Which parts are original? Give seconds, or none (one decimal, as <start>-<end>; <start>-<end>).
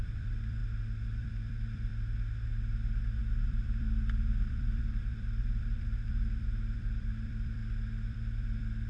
0.6-1.2; 1.9-3.2; 7.6-8.1